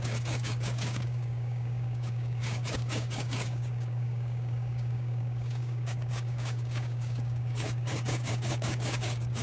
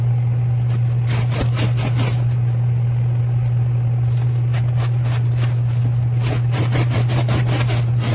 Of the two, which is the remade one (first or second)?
first